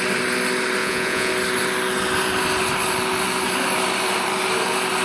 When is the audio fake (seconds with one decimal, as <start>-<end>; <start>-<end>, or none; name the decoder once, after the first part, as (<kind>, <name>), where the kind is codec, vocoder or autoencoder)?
0.8-1.3 (vocoder, Vocos)